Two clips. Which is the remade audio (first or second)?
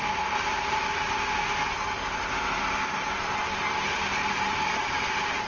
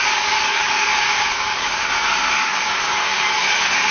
second